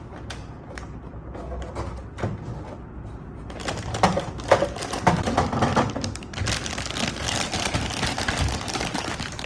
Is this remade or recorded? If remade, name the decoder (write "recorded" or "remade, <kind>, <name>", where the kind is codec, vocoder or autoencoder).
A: recorded